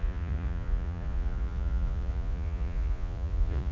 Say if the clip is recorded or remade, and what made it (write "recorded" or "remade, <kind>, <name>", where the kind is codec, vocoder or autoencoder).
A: remade, vocoder, Vocos